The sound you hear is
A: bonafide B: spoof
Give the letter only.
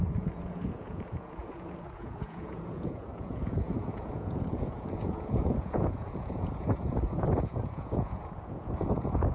B